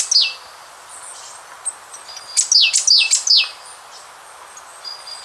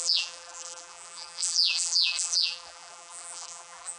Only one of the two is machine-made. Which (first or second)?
second